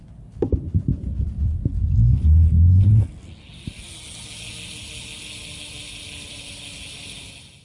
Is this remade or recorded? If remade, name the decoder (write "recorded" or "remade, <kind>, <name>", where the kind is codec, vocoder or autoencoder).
recorded